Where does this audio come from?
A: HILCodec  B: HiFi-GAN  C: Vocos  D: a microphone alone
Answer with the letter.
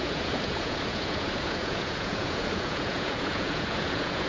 C